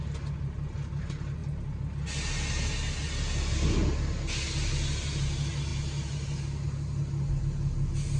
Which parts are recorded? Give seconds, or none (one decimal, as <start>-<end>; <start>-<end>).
0.0-8.2